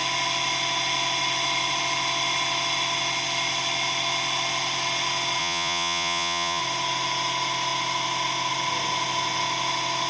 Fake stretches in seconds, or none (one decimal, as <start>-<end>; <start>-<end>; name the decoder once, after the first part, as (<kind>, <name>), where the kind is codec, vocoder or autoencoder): 5.4-6.6 (vocoder, Vocos)